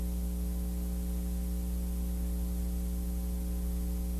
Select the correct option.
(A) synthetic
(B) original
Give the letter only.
B